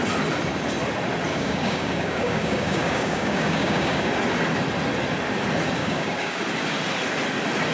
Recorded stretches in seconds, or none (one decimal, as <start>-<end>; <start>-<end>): 0.0-1.3; 4.1-5.8; 6.4-7.7